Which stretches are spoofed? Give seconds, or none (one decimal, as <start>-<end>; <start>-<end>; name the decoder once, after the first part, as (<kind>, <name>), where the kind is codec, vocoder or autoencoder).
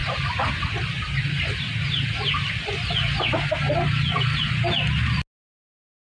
0.0-3.7 (vocoder, BigVGAN v2)